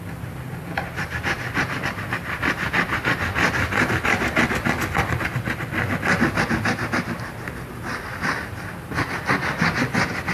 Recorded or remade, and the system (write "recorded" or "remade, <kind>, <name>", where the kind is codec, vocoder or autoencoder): recorded